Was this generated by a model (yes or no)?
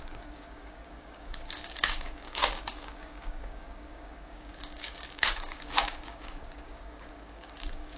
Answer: yes